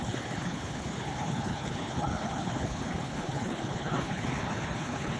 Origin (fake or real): fake